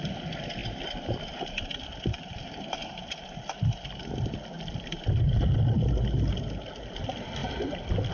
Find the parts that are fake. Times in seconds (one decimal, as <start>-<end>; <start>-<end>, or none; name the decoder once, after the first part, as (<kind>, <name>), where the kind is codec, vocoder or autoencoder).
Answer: none